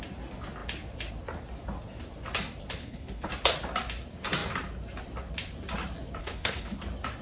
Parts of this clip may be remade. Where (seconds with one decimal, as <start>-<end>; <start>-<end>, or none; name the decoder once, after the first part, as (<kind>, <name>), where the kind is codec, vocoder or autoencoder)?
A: 2.8-3.3 (codec, HILCodec); 6.2-6.8

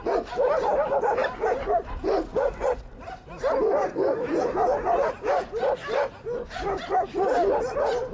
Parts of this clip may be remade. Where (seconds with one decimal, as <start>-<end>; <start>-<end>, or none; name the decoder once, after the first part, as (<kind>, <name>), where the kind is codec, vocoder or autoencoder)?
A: none

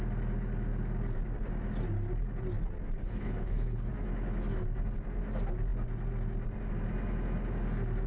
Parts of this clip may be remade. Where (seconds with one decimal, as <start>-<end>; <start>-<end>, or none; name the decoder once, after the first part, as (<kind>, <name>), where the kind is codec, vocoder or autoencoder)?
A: 3.0-3.9 (codec, HILCodec)

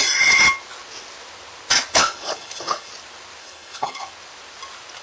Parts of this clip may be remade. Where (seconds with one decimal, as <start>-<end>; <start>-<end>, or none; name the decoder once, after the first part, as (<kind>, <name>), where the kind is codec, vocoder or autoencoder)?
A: 1.9-2.9 (codec, HILCodec); 3.4-4.1

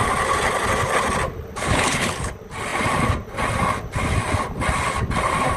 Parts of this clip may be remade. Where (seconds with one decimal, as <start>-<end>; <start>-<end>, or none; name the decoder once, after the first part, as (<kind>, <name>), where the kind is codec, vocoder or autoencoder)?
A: 1.6-2.3 (codec, HILCodec)

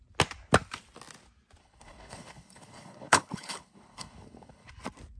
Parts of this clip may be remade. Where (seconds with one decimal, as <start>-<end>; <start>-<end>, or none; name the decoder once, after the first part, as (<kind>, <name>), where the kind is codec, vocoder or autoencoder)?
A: 1.6-4.7 (codec, HILCodec)

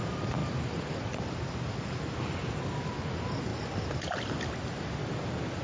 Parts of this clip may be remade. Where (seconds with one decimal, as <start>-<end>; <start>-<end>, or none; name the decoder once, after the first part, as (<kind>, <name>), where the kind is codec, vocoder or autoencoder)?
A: none

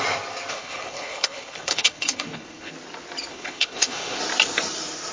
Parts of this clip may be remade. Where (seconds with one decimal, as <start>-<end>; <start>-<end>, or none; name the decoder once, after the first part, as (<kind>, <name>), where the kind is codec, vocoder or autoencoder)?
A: 0.5-2.7 (codec, HILCodec); 3.3-4.2